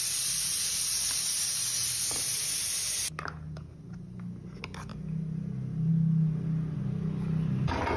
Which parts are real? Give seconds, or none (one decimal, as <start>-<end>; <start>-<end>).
0.0-8.0